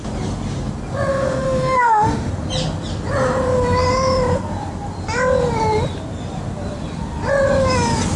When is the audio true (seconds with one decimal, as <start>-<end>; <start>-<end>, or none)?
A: 0.0-1.1; 2.3-8.2